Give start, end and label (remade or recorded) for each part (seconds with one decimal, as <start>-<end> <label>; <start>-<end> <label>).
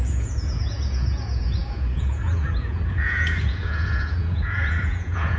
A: 0.0-5.4 remade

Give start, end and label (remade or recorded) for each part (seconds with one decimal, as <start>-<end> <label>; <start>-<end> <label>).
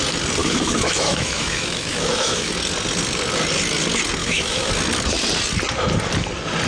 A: 0.0-0.4 recorded; 0.4-2.5 remade; 2.5-4.2 recorded; 4.2-4.7 remade; 4.7-6.7 recorded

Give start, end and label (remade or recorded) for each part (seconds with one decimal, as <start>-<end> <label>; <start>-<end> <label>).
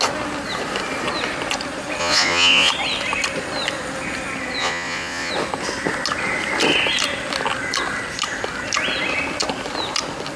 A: 0.0-2.0 recorded; 2.0-2.7 remade; 2.7-4.6 recorded; 4.6-5.3 remade; 5.3-10.4 recorded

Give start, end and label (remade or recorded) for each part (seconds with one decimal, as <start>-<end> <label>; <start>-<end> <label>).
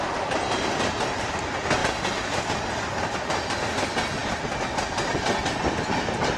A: 0.0-6.4 recorded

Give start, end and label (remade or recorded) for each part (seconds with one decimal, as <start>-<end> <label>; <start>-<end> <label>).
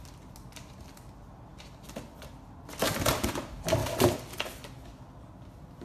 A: 0.0-5.8 recorded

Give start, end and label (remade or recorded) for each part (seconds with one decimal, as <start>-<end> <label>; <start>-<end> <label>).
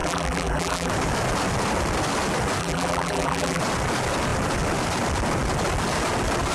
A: 0.0-0.9 remade; 0.9-2.6 recorded; 2.6-3.6 remade; 3.6-6.5 recorded